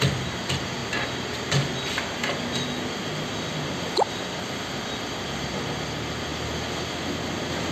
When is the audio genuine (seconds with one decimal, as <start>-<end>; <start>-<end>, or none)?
0.0-7.7